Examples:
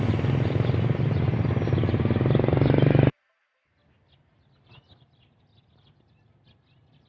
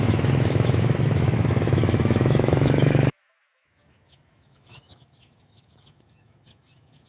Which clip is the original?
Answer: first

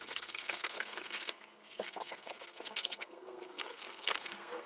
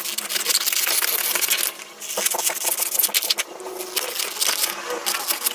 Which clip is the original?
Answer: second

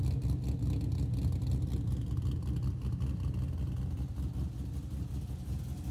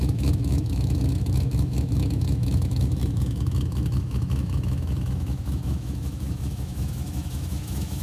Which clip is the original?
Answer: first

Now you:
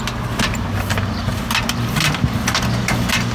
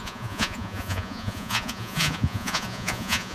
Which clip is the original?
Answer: first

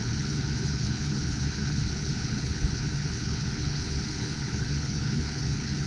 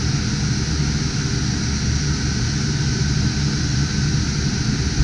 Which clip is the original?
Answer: second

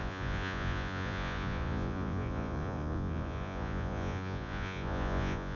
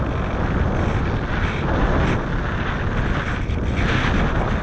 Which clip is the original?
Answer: second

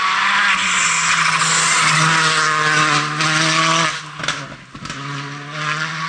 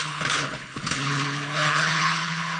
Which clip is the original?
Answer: first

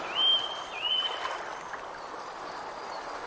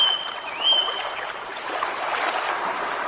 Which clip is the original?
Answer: first